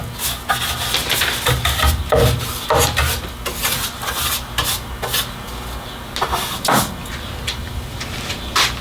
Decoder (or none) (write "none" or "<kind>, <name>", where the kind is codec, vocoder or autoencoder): none